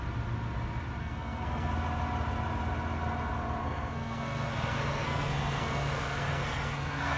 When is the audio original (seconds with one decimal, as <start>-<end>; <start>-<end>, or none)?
0.0-1.0; 1.7-3.6